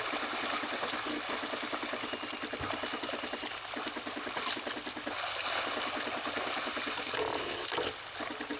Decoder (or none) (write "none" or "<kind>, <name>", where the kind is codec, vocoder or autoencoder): none